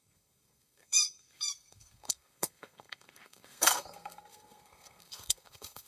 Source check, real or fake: fake